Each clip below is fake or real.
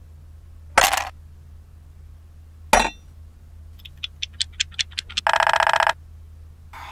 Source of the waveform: real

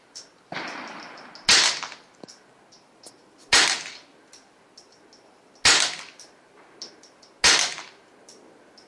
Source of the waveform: real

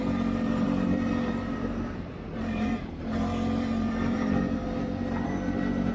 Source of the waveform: fake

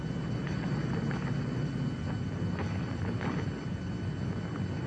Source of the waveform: real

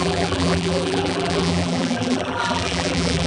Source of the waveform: fake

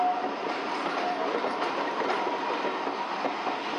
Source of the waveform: real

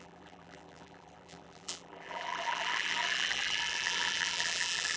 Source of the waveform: fake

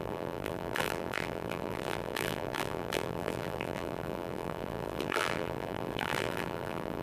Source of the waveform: fake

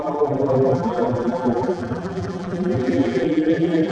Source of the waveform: fake